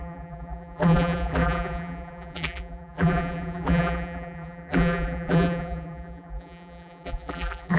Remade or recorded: remade